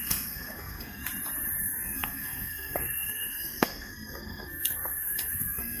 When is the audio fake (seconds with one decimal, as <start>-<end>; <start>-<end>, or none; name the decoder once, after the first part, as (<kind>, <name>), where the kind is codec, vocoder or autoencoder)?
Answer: 0.0-1.0 (codec, SNAC); 1.6-5.8